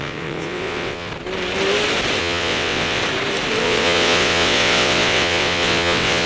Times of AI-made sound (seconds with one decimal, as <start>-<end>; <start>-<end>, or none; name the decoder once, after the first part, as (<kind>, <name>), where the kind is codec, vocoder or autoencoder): 0.0-1.1 (vocoder, WaveNeXt); 2.2-3.0; 3.6-6.3